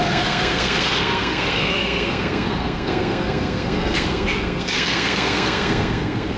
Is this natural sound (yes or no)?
no